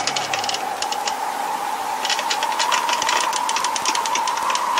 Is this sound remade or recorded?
recorded